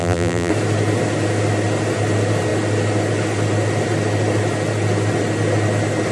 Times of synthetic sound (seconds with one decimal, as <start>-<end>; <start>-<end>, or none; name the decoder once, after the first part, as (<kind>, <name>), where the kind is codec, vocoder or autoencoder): 0.0-0.5 (vocoder, BigVGAN v2)